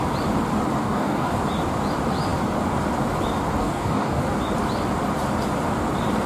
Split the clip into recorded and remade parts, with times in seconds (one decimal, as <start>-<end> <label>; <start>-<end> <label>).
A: 0.0-0.8 recorded; 0.8-1.4 remade; 1.4-3.6 recorded; 3.6-4.2 remade; 4.2-6.3 recorded